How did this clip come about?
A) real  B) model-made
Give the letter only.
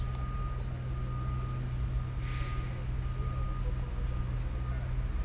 A